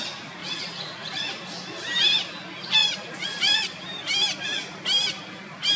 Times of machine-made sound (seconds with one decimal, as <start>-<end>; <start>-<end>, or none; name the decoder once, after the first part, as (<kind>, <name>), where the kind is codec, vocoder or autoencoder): 0.4-1.2 (vocoder, Vocos); 2.8-3.8